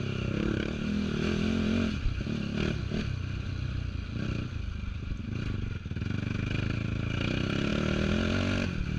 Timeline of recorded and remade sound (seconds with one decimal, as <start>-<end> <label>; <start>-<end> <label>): 0.0-9.0 recorded